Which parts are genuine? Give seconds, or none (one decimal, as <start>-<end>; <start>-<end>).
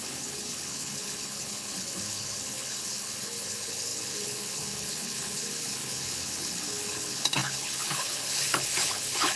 none